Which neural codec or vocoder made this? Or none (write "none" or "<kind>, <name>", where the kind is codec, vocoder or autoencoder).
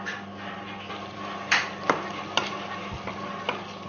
none